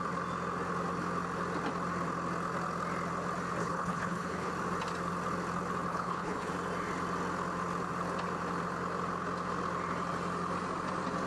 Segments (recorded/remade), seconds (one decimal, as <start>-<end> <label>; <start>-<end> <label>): 0.0-3.6 recorded; 3.6-4.5 remade; 4.5-5.9 recorded; 5.9-6.5 remade; 6.5-11.3 recorded